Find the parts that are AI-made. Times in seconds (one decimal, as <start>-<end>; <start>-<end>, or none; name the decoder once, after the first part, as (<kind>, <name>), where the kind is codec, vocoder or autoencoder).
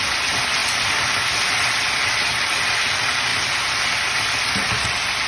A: 0.6-1.4 (vocoder, BigVGAN v2)